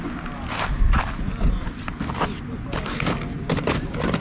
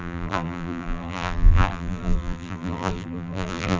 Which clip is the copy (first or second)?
second